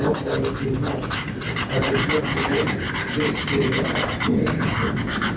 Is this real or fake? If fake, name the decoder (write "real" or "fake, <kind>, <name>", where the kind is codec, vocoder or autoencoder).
real